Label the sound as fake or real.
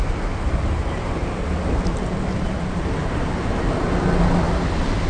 real